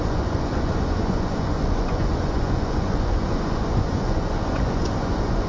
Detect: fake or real fake